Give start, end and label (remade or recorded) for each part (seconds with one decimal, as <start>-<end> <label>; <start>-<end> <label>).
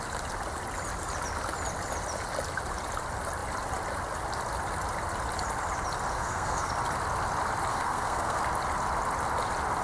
0.0-6.1 recorded; 6.1-6.7 remade; 6.7-7.7 recorded; 7.7-8.4 remade; 8.4-9.8 recorded